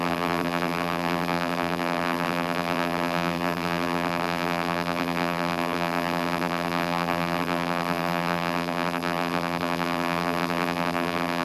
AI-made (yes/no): yes